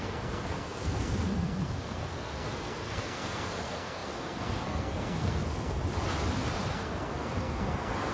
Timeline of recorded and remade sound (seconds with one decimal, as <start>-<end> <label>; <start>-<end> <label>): 0.0-5.8 remade; 5.8-6.7 recorded; 6.7-8.1 remade